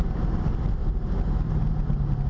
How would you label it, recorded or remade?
recorded